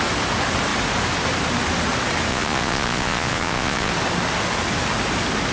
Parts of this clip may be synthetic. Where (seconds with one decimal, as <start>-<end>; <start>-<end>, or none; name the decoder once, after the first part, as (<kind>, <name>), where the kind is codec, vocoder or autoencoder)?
2.3-3.9 (vocoder, Vocos)